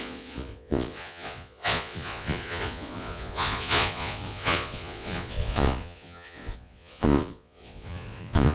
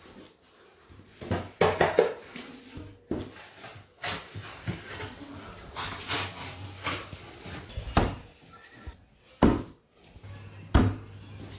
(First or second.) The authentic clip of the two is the second